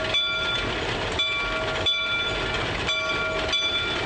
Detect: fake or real real